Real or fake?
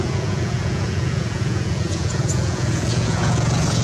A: fake